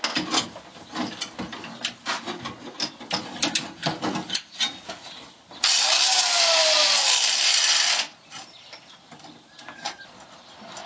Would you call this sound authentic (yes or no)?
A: yes